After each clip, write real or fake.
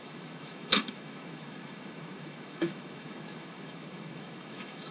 fake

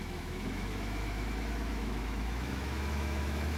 fake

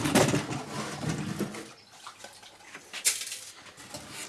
real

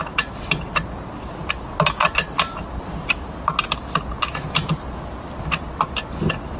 real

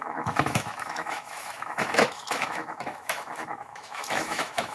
fake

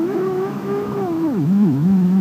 fake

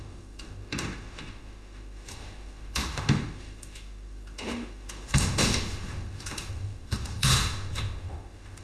fake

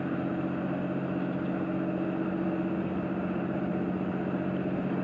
real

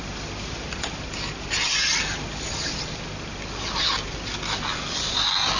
real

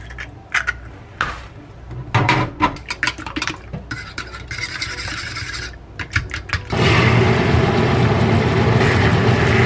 real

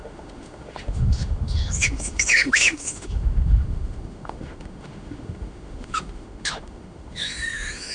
fake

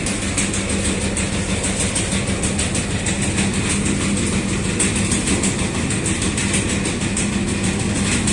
real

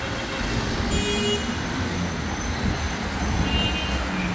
real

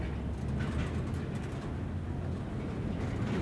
real